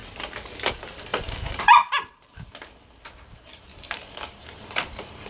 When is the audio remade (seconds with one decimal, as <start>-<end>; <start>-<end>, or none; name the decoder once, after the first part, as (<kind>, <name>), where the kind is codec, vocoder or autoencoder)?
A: 0.7-5.3 (vocoder, BigVGAN v2)